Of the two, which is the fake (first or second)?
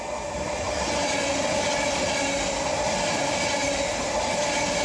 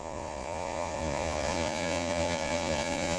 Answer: second